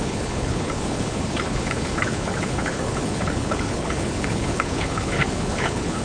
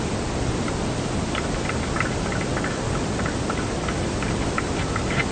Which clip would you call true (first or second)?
second